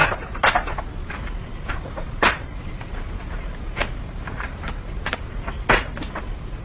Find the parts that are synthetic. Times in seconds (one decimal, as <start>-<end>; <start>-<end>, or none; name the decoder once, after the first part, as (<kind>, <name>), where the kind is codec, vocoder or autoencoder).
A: 1.0-5.0 (vocoder, BigVGAN v2)